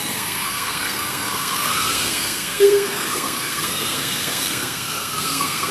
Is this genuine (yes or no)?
no